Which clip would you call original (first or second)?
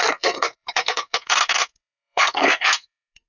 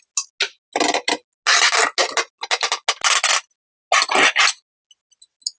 second